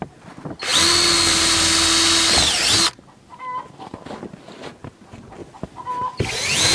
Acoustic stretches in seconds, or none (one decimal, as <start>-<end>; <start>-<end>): 0.0-6.7